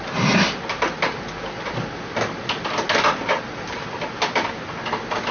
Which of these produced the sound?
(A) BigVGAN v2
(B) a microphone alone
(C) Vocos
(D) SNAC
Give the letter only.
B